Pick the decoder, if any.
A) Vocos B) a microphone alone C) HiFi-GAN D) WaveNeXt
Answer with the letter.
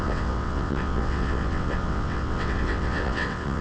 D